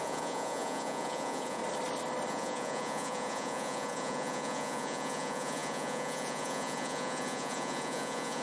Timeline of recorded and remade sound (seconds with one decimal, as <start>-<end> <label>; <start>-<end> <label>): 0.0-1.6 remade; 1.6-2.3 recorded; 2.3-8.4 remade